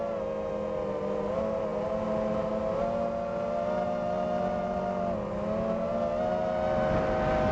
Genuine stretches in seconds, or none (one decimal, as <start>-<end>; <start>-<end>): 0.0-7.5